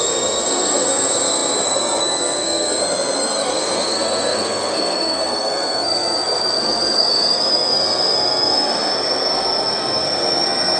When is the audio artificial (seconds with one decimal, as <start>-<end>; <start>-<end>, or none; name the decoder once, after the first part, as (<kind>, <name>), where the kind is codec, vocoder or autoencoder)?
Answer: 0.0-10.8 (codec, SNAC)